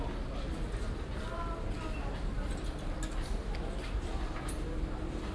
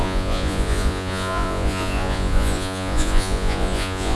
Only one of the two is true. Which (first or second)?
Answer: first